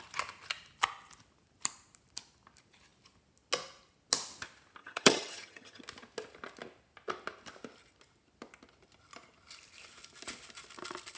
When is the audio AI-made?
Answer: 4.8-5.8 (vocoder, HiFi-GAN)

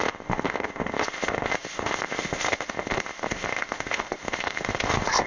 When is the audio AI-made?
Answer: 0.0-5.3 (codec, ZipCodec)

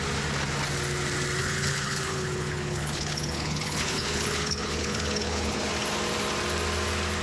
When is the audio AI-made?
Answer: 1.4-5.7 (codec, HILCodec)

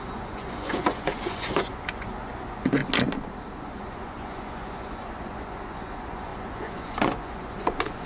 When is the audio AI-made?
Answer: 0.0-2.8 (vocoder, Vocos); 3.6-8.1

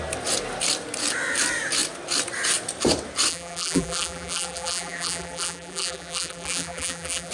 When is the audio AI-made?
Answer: 3.3-7.3 (vocoder, BigVGAN v2)

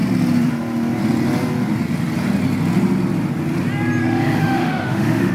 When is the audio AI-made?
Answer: 4.0-5.3 (autoencoder, DAC-VAE)

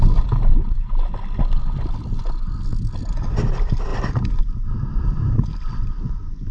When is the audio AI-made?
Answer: none

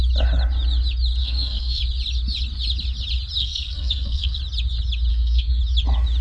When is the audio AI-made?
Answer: 1.2-1.8 (codec, SNAC); 3.4-4.4; 5.1-5.6